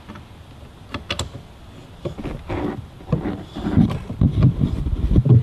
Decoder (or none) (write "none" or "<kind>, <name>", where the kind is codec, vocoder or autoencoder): none